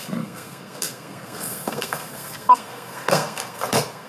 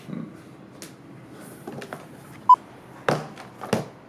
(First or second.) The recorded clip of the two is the second